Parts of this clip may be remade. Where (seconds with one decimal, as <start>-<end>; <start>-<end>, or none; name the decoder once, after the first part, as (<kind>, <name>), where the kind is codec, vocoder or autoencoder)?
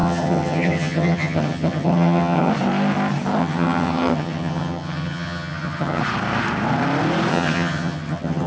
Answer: 0.0-2.5 (vocoder, HiFi-GAN); 3.4-6.0; 7.3-8.5